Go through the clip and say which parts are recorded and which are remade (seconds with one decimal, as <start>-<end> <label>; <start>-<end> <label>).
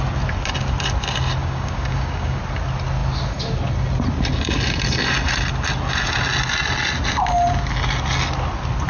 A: 0.0-1.4 recorded; 1.4-2.4 remade; 2.4-8.9 recorded